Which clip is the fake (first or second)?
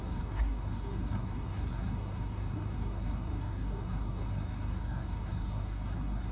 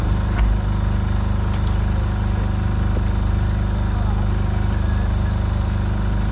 first